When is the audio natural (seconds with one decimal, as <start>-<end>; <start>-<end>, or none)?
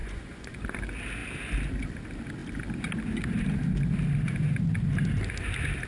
0.6-5.9